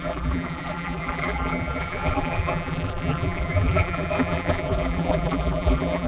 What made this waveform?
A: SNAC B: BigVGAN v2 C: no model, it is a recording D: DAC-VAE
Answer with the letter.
B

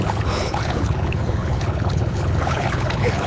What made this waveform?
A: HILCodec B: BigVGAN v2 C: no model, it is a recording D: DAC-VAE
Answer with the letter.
A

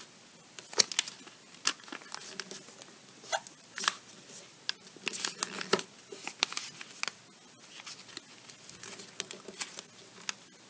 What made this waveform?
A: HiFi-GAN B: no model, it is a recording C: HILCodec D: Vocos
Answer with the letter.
B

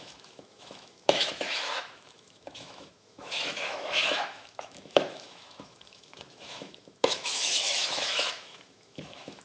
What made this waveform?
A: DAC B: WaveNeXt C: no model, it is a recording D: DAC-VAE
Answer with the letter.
D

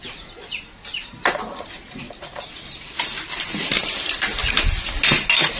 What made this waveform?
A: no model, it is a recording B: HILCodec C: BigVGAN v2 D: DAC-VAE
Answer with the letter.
A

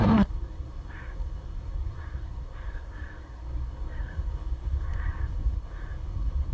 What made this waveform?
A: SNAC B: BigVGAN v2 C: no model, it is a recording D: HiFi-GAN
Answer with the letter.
A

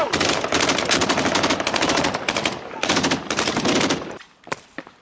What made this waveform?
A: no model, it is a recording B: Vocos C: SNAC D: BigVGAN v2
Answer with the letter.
D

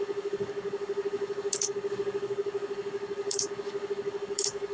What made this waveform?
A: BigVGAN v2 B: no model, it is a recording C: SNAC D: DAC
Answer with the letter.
D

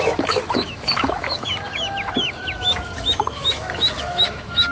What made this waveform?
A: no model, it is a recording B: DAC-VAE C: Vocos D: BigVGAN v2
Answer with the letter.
B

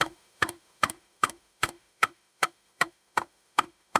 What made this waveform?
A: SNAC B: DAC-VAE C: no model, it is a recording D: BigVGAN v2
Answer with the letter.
B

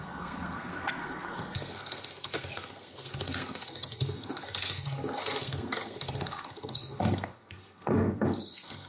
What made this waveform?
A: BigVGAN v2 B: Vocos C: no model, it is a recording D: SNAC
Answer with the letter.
D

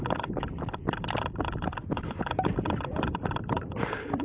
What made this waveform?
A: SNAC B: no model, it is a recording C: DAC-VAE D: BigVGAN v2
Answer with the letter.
B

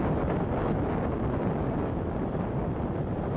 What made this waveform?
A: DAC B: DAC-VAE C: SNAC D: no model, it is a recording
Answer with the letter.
D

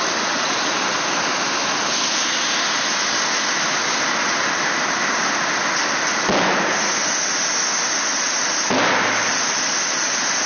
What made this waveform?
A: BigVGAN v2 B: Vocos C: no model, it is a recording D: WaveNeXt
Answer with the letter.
C